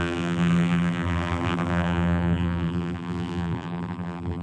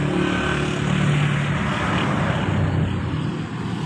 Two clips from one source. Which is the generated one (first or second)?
first